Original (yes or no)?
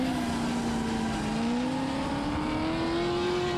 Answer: yes